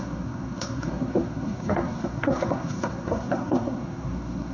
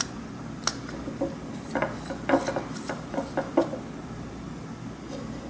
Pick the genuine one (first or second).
second